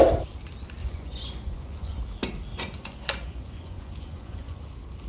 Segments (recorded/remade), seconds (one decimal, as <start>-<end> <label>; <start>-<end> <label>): 0.0-0.8 recorded; 0.8-2.0 remade; 2.0-2.5 recorded; 2.5-4.6 remade; 4.6-5.1 recorded